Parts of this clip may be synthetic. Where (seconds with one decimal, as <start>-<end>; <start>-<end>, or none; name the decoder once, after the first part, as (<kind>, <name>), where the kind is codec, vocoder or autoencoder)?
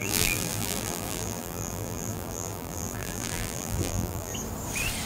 0.0-4.3 (vocoder, BigVGAN v2)